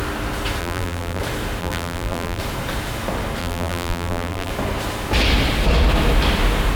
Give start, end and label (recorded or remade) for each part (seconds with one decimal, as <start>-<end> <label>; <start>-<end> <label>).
0.0-0.6 recorded; 0.6-1.2 remade; 1.2-1.6 recorded; 1.6-2.4 remade; 2.4-3.4 recorded; 3.4-4.5 remade; 4.5-6.8 recorded